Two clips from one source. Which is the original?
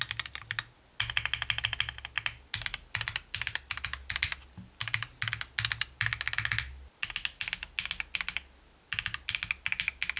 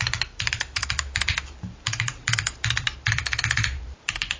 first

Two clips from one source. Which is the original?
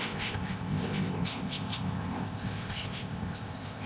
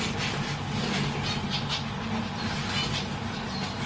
second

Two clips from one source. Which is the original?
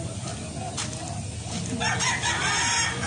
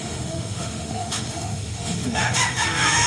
first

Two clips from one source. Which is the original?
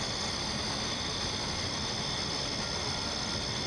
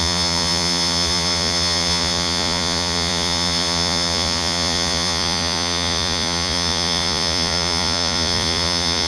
first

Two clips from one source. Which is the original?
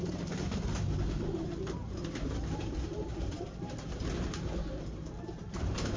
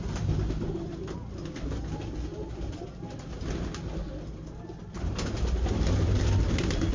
second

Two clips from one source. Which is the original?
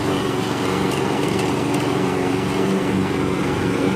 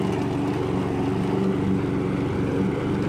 second